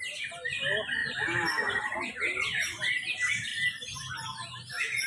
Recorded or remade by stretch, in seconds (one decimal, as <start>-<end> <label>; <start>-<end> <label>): 0.0-1.0 recorded; 1.0-2.2 remade; 2.2-3.5 recorded; 3.5-4.1 remade; 4.1-5.1 recorded